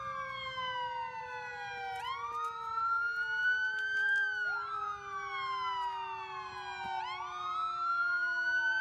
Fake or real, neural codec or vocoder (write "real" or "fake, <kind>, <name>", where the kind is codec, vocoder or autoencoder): real